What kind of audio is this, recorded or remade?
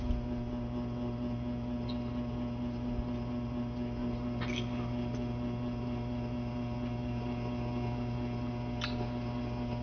recorded